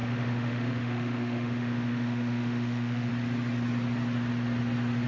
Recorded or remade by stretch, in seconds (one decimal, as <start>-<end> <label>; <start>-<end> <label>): 0.0-3.1 remade; 3.1-5.1 recorded